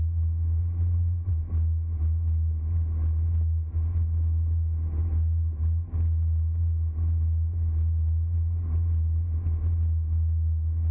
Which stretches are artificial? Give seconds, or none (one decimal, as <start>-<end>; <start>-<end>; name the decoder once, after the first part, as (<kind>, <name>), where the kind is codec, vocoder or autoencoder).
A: 0.6-1.3 (vocoder, Vocos)